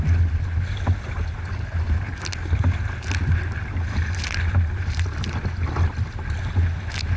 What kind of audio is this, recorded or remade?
recorded